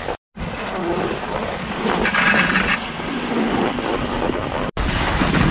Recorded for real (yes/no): yes